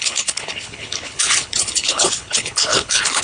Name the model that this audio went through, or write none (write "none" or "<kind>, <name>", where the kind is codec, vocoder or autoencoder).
codec, HILCodec